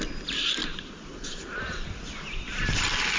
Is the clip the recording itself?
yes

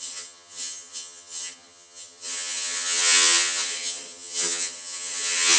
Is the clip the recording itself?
no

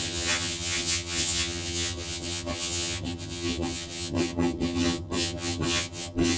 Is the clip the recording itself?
no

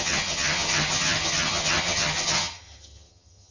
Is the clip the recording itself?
no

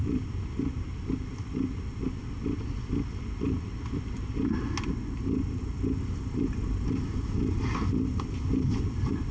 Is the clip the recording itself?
yes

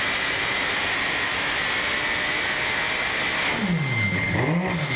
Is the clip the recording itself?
yes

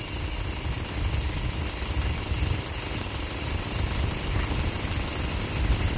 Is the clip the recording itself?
yes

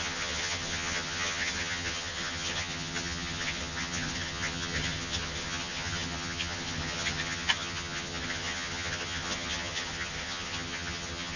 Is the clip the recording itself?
no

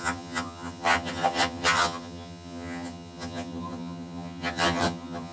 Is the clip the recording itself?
no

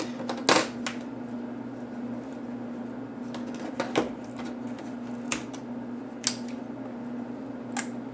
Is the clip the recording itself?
yes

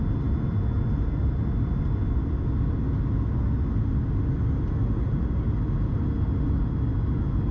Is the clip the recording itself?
yes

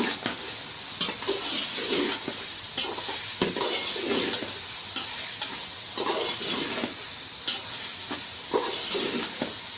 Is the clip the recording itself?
yes